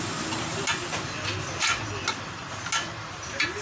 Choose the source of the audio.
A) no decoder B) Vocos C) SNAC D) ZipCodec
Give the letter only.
A